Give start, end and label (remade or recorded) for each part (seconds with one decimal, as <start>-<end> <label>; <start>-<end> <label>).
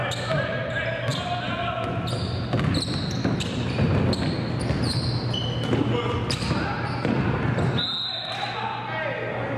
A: 0.0-9.6 recorded